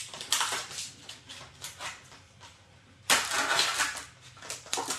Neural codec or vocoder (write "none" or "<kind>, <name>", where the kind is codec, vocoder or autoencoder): none